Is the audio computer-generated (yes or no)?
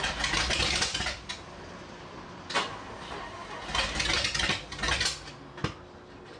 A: no